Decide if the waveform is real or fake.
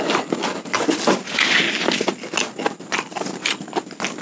real